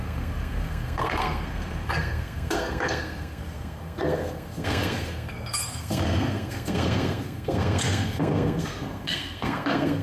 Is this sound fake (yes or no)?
yes